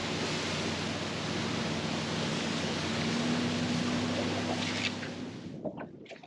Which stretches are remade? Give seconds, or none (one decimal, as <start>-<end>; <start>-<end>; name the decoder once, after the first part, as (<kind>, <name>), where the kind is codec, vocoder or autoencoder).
2.3-3.1 (codec, DAC)